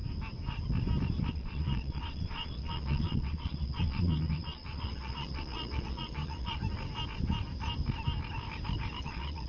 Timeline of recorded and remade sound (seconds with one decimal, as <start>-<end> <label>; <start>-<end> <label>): 0.0-1.3 recorded; 1.3-6.6 remade; 6.6-9.0 recorded; 9.0-9.5 remade